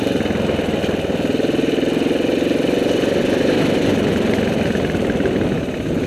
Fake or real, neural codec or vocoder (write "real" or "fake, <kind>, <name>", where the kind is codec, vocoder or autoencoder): real